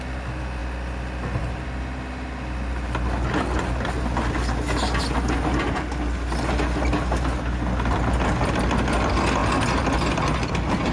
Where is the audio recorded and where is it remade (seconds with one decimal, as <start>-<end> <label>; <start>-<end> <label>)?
0.0-0.6 recorded; 0.6-1.4 remade; 1.4-10.9 recorded